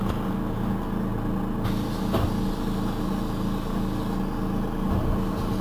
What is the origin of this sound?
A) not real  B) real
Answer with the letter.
B